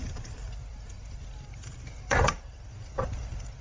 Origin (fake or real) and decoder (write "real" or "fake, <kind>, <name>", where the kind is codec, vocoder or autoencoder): fake, vocoder, BigVGAN v2